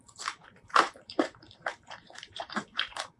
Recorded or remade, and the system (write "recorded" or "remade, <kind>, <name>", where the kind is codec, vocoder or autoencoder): remade, vocoder, BigVGAN v2